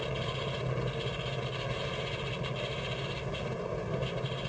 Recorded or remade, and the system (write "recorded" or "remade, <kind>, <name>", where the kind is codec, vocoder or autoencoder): recorded